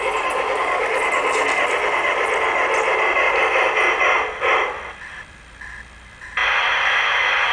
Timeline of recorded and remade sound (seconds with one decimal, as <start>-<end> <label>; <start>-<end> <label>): 0.0-7.5 recorded

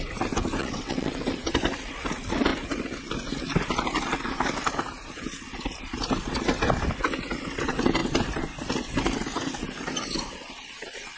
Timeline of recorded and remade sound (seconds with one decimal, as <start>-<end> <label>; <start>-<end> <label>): 0.0-0.6 recorded; 0.6-1.2 remade; 1.2-11.2 recorded

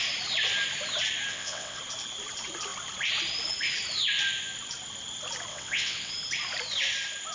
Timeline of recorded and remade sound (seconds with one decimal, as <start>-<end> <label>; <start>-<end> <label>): 0.0-1.3 recorded; 1.3-1.8 remade; 1.8-5.5 recorded; 5.5-6.1 remade; 6.1-7.3 recorded

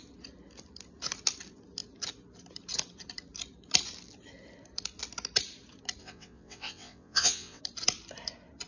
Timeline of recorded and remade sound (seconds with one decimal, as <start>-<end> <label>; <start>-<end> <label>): 0.0-6.0 recorded; 6.0-7.6 remade; 7.6-8.7 recorded